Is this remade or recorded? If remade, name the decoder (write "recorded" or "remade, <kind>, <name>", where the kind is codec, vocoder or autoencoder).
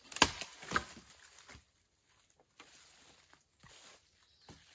recorded